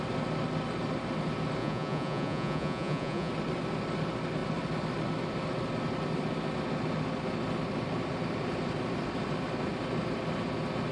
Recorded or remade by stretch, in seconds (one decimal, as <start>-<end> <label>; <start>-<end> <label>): 0.0-1.6 recorded; 1.6-3.3 remade; 3.3-10.9 recorded